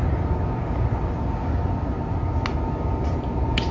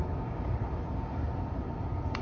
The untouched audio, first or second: first